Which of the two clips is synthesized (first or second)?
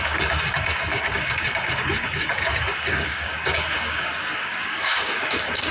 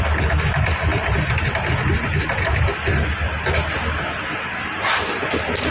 first